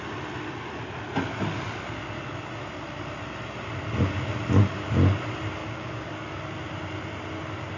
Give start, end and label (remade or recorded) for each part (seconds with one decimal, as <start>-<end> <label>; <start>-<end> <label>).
0.0-5.6 recorded; 5.6-6.1 remade; 6.1-7.8 recorded